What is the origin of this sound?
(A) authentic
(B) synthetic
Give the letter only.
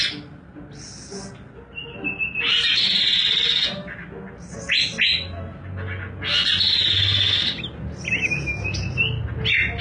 A